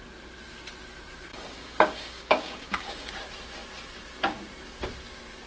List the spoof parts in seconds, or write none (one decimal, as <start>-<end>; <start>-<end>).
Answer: 1.3-3.1